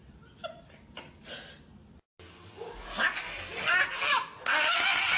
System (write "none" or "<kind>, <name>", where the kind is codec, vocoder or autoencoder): none